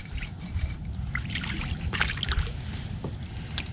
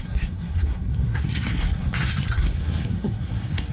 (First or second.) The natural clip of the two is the first